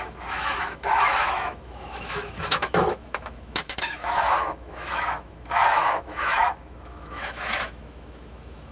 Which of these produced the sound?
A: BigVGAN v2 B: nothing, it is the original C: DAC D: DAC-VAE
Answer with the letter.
D